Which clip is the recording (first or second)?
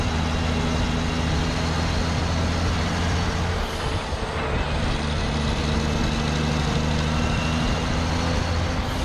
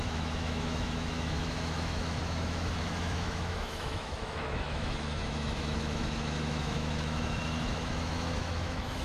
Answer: first